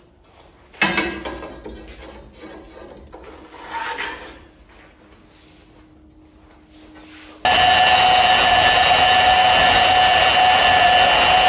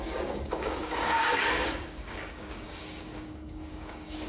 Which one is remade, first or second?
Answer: second